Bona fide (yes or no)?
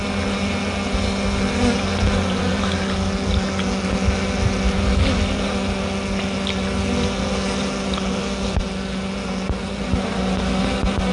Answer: yes